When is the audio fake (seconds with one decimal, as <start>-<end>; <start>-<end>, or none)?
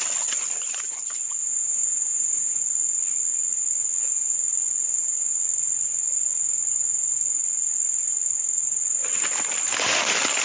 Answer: 1.4-2.6